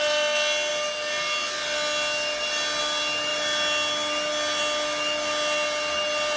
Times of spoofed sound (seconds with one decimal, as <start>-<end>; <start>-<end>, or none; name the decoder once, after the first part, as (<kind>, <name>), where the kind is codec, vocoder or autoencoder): none

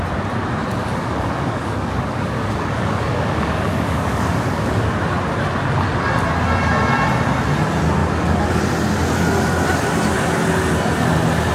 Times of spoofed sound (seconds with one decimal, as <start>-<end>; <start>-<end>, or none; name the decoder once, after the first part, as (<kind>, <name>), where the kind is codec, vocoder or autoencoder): 0.8-4.8 (codec, DAC); 8.0-8.6